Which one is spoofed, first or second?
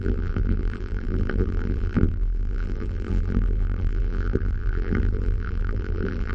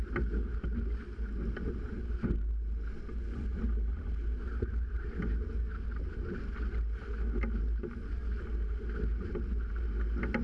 first